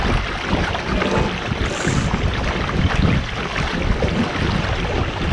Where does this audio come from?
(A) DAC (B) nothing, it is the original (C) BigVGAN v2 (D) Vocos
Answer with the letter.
B